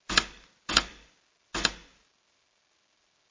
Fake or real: real